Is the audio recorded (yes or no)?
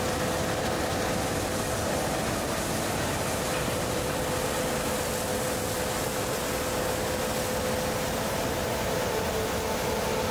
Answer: yes